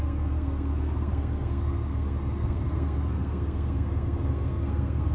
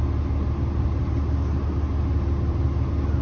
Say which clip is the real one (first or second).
second